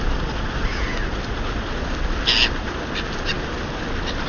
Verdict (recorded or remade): recorded